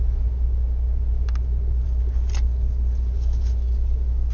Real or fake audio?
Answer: real